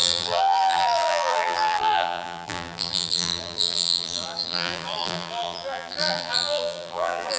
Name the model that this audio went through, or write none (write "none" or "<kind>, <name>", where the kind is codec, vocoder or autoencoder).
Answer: vocoder, BigVGAN v2